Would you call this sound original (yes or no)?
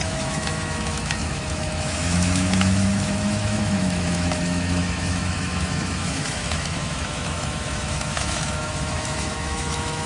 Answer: no